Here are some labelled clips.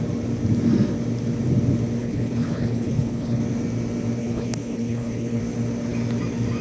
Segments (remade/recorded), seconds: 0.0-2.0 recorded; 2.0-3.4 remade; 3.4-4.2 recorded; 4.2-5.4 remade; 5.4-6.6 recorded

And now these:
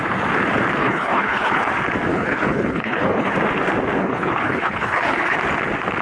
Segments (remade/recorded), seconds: 0.0-0.8 recorded; 0.8-1.7 remade; 1.7-2.1 recorded; 2.1-3.3 remade; 3.3-4.0 recorded; 4.0-5.4 remade; 5.4-6.0 recorded

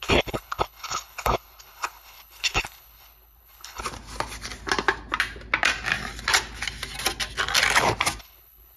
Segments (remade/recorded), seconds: 0.0-3.8 remade; 3.8-8.2 recorded; 8.2-8.8 remade

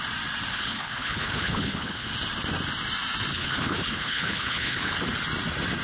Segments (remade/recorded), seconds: 0.0-0.5 recorded; 0.5-2.1 remade; 2.1-3.3 recorded; 3.3-5.0 remade; 5.0-5.8 recorded

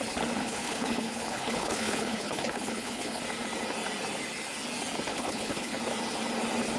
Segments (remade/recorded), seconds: 0.0-0.4 recorded; 0.4-3.2 remade; 3.2-5.1 recorded; 5.1-5.8 remade; 5.8-6.8 recorded

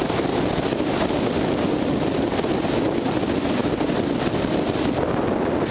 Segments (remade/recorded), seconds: 0.0-5.7 recorded